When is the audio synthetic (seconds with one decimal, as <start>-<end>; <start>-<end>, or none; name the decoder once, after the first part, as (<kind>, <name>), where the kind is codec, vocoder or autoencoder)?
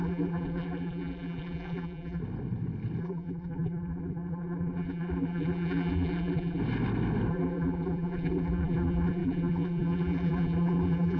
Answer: 0.0-2.2 (vocoder, BigVGAN v2); 3.0-6.6; 7.3-11.2